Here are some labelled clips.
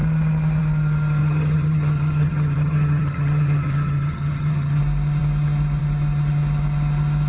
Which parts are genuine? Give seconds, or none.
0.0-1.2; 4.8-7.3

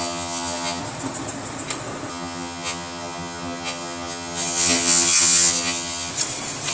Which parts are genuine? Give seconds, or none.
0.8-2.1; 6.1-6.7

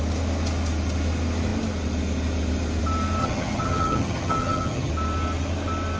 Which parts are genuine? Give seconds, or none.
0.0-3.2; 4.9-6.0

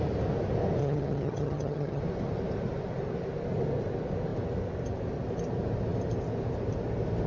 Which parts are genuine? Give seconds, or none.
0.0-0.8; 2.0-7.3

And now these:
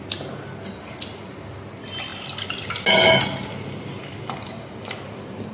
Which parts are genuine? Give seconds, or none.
0.0-5.5